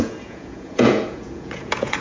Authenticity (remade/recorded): remade